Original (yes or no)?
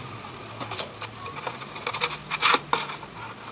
yes